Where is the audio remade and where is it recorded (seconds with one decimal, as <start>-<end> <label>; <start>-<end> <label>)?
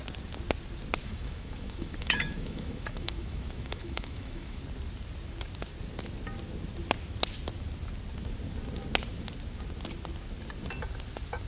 0.0-1.0 recorded; 1.0-4.6 remade; 4.6-11.5 recorded